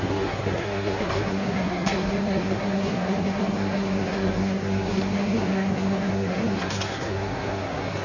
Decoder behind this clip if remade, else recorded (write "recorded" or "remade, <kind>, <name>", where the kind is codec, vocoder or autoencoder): remade, codec, SNAC